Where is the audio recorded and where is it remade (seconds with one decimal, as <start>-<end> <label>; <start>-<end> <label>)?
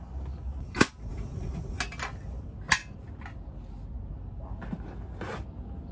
0.0-1.1 recorded; 1.1-1.8 remade; 1.8-5.9 recorded